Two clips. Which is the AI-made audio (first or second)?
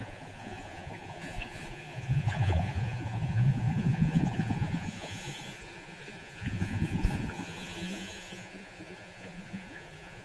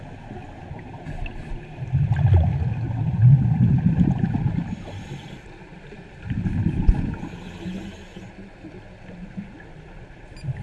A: first